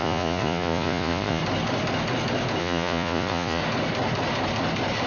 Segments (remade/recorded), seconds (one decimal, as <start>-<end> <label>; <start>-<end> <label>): 0.0-1.4 remade; 1.4-2.6 recorded; 2.6-3.6 remade; 3.6-5.1 recorded